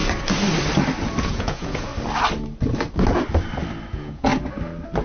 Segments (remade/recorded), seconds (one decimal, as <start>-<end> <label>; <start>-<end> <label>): 0.0-1.2 recorded; 1.2-1.9 remade; 1.9-3.9 recorded; 3.9-4.3 remade; 4.3-5.0 recorded